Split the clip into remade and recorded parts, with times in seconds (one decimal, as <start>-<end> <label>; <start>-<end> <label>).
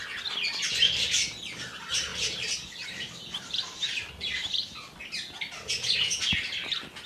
0.0-2.1 recorded; 2.1-4.1 remade; 4.1-7.1 recorded